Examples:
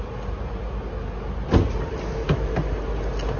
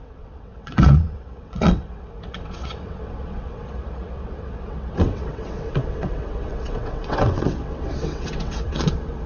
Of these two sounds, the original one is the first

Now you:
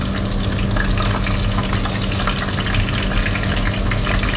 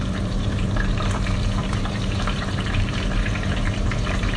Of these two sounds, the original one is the first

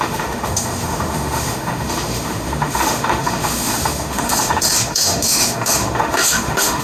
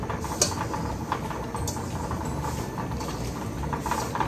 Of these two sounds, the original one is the second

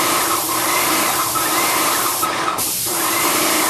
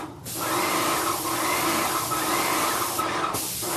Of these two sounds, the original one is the second